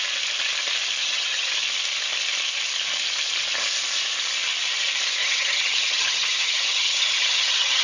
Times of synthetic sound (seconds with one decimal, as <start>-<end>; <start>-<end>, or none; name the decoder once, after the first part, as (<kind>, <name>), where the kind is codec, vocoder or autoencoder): 1.0-1.5 (vocoder, HiFi-GAN); 5.2-7.8